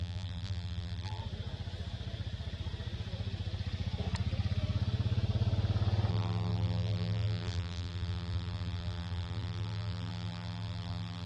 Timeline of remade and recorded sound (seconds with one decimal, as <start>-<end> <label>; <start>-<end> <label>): 0.0-1.2 remade; 1.2-6.1 recorded; 6.1-11.3 remade